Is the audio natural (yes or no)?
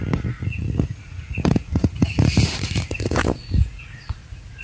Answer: no